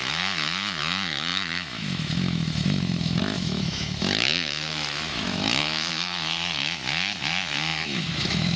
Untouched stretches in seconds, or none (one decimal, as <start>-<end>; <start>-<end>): none